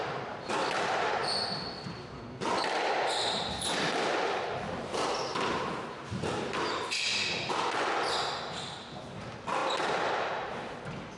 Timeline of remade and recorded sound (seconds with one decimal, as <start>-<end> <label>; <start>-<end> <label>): 0.0-11.2 recorded

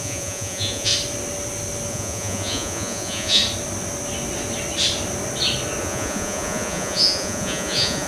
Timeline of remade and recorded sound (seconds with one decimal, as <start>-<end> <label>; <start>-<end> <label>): 0.0-0.9 remade; 0.9-1.9 recorded; 1.9-3.4 remade; 3.4-5.8 recorded; 5.8-8.1 remade

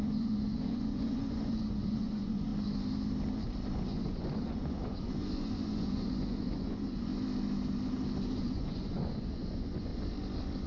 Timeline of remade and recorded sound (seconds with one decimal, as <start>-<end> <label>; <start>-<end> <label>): 0.0-2.5 remade; 2.5-3.8 recorded; 3.8-7.1 remade; 7.1-8.4 recorded; 8.4-9.9 remade; 9.9-10.7 recorded

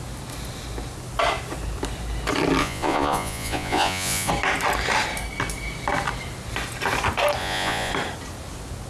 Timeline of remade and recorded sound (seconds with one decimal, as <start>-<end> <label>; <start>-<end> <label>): 0.0-2.6 recorded; 2.6-4.3 remade; 4.3-7.4 recorded; 7.4-7.9 remade; 7.9-8.9 recorded

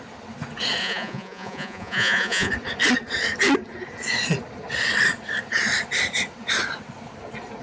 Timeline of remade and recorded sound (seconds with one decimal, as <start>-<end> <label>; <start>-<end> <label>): 0.0-0.8 recorded; 0.8-2.5 remade; 2.5-7.6 recorded

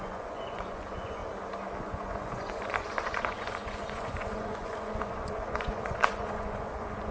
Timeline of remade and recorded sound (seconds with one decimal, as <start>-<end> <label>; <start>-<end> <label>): 0.0-1.2 remade; 1.2-1.8 recorded; 1.8-7.1 remade

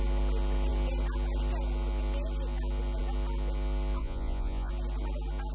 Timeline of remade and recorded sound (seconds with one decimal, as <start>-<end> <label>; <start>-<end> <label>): 0.0-4.0 recorded; 4.0-4.7 remade; 4.7-5.5 recorded

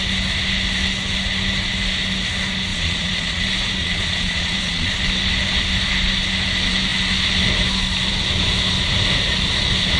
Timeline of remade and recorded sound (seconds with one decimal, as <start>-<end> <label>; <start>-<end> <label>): 0.0-2.7 recorded; 2.7-3.4 remade; 3.4-3.8 recorded; 3.8-4.9 remade; 4.9-10.0 recorded